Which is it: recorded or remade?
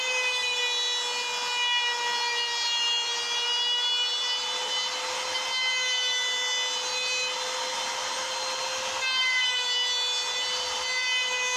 recorded